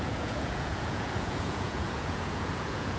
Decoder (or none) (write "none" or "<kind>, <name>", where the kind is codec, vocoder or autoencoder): vocoder, Vocos